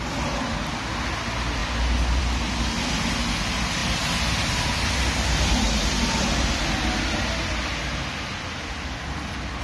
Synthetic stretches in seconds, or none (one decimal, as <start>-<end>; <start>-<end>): none